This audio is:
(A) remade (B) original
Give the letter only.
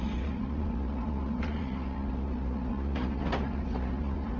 A